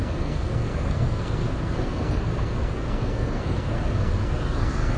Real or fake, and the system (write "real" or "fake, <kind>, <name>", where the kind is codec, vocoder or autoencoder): fake, codec, SNAC